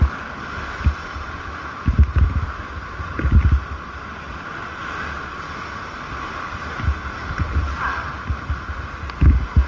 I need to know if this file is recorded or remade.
recorded